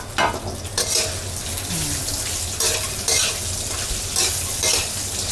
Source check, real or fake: real